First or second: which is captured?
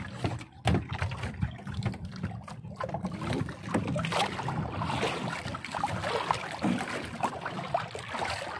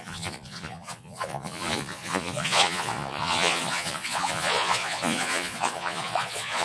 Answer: first